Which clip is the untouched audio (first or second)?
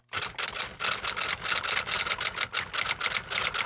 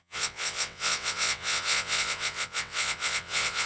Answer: first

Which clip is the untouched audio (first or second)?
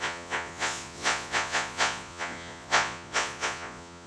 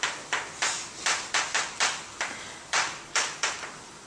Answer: second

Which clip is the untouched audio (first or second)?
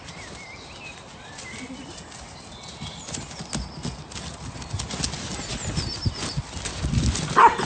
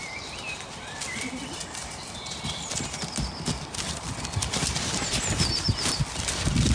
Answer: first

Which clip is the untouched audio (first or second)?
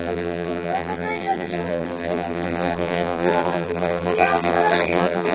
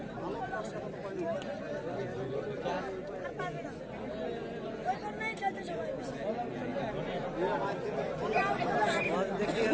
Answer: second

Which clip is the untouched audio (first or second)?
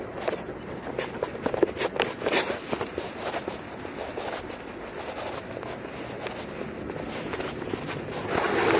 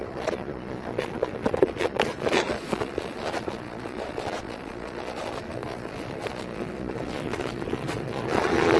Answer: first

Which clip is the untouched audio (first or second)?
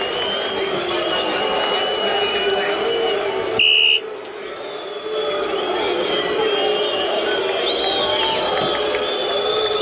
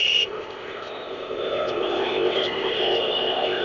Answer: first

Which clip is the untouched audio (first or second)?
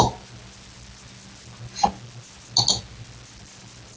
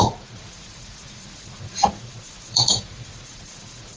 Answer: first